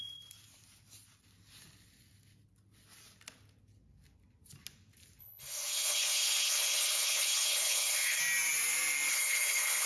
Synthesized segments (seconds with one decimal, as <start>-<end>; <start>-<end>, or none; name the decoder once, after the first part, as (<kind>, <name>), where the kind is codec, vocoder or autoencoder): 5.2-8.2 (codec, HILCodec); 9.1-9.9